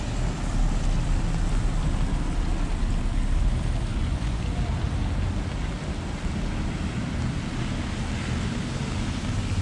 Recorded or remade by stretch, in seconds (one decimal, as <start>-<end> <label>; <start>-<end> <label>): 0.0-3.9 recorded; 3.9-4.4 remade; 4.4-9.6 recorded